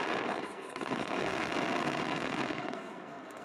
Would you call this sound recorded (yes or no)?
no